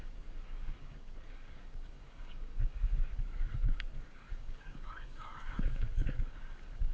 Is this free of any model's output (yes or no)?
no